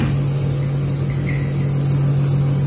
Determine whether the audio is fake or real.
real